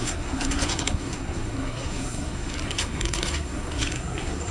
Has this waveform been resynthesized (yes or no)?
yes